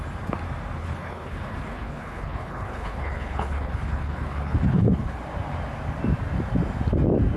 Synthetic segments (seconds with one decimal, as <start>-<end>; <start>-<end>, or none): 0.8-5.2